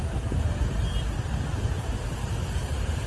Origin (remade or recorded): recorded